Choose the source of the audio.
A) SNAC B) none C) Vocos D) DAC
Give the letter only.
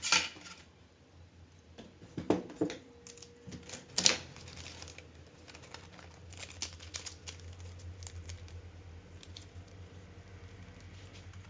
B